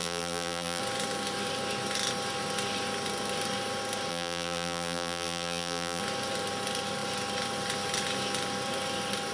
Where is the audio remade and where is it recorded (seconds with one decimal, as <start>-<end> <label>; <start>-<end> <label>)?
0.0-0.8 remade; 0.8-4.1 recorded; 4.1-6.0 remade; 6.0-9.3 recorded